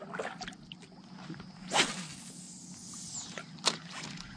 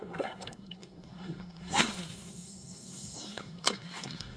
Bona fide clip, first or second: first